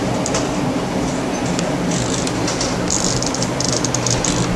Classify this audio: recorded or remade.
recorded